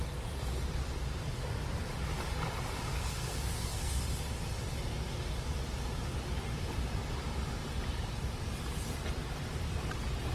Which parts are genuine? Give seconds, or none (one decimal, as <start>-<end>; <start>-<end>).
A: 0.0-2.9; 4.0-10.3